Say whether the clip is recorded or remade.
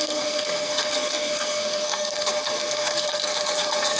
remade